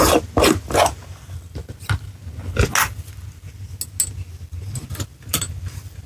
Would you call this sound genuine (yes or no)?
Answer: yes